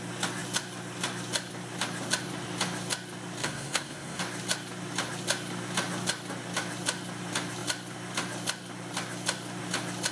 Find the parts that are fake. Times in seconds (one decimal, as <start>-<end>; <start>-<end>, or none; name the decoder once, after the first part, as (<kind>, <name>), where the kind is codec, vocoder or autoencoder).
3.4-4.2 (codec, SNAC)